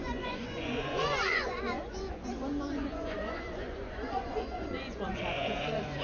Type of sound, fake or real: fake